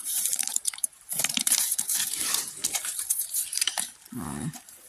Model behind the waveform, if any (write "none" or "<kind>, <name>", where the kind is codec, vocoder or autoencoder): vocoder, BigVGAN v2